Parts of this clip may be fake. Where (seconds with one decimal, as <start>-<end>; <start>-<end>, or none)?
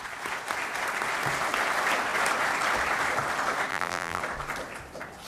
3.7-4.2